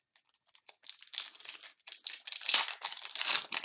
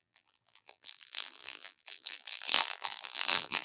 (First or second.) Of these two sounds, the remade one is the second